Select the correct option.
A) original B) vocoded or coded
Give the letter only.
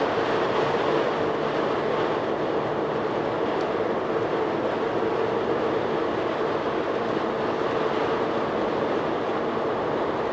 A